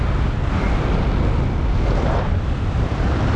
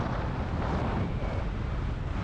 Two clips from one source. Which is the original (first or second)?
first